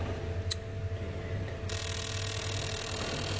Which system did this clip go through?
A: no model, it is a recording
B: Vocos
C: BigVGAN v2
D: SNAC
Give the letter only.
A